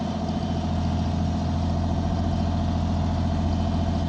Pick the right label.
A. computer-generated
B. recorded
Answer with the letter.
B